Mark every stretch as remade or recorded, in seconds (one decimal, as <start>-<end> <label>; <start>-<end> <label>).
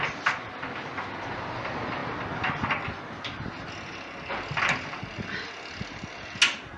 0.0-6.8 recorded